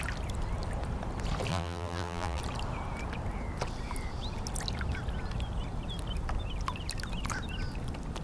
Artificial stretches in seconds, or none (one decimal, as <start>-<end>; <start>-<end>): 1.5-2.4